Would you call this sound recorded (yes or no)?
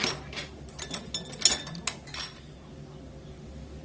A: yes